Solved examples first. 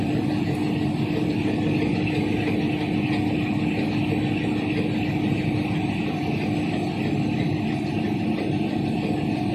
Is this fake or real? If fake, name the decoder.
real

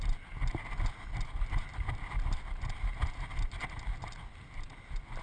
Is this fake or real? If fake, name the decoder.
real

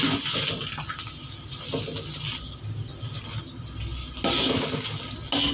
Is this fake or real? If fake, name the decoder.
real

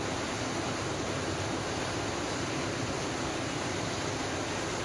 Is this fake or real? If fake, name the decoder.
real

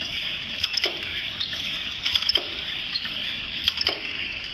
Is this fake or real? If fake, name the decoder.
fake, codec, DAC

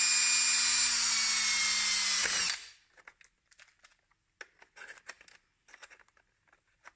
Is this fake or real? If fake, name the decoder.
real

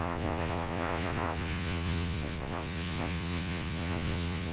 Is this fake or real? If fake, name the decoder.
fake, vocoder, Vocos